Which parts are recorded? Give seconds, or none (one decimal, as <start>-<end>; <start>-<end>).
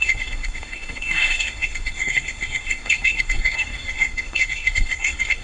none